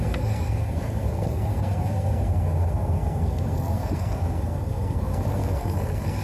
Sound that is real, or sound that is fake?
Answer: fake